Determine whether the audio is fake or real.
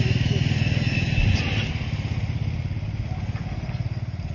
real